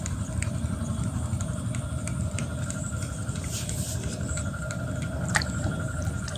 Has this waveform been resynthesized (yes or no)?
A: yes